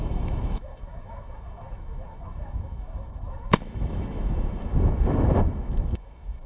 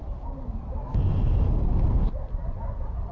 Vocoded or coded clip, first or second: first